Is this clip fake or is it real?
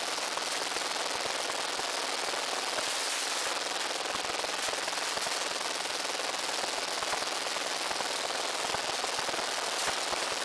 real